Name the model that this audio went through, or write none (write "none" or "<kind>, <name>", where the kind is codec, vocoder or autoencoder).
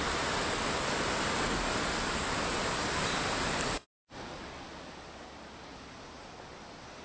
none